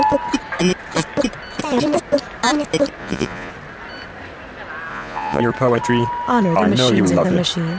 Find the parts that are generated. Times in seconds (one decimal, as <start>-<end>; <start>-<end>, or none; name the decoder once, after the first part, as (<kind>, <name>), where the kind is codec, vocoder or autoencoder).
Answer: 3.0-3.5 (vocoder, Vocos); 4.9-5.4